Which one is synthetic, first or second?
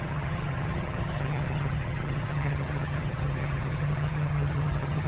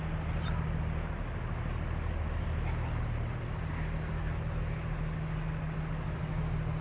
first